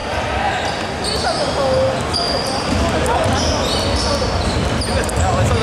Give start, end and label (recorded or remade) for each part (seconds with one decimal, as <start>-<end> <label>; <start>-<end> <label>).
0.0-5.6 recorded

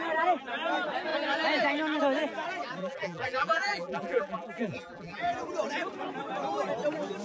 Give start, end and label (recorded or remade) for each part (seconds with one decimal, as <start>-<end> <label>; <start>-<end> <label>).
0.0-2.8 recorded; 2.8-5.2 remade; 5.2-7.2 recorded